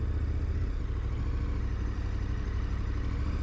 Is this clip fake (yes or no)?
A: no